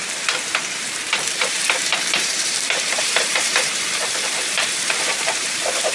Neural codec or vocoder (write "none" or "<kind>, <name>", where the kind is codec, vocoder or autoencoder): vocoder, BigVGAN v2